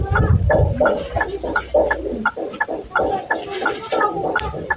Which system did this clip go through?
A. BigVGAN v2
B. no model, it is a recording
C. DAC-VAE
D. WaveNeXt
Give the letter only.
A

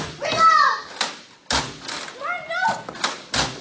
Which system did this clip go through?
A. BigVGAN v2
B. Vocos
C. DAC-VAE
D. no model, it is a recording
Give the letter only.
D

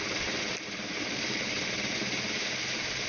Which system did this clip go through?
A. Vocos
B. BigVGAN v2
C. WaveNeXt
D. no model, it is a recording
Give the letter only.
D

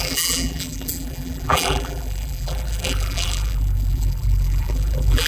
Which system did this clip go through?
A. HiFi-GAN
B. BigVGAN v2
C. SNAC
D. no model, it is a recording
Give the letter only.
B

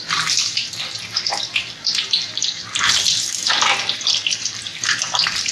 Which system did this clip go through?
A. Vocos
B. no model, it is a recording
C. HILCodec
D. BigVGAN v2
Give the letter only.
D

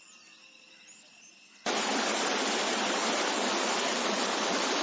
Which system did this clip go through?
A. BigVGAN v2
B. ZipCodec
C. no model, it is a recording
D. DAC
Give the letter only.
A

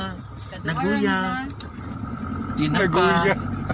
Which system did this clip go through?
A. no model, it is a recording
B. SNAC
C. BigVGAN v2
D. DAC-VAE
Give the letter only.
A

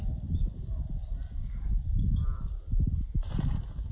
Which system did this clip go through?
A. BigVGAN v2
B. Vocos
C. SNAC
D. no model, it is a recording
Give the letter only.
A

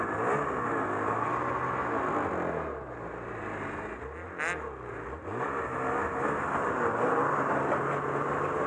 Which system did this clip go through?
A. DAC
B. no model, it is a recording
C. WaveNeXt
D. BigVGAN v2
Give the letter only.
B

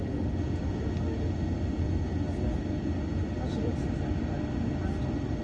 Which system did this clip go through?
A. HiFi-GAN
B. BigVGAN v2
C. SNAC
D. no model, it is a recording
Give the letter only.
D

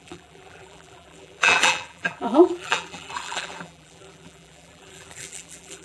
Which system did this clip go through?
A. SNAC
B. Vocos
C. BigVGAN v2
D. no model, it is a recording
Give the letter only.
C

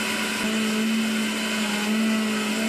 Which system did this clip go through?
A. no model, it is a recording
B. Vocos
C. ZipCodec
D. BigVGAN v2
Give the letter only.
A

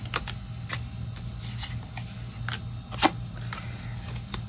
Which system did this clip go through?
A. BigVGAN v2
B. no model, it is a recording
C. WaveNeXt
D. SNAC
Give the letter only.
B